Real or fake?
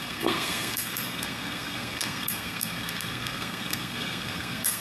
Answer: fake